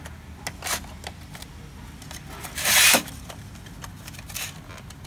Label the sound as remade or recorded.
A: recorded